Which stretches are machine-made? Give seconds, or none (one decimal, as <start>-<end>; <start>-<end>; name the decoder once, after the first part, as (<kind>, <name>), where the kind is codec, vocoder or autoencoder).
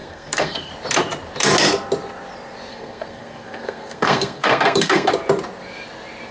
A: 0.0-0.7 (codec, SNAC); 2.7-5.1